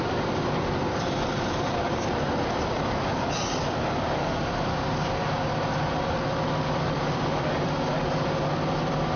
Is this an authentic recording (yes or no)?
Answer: no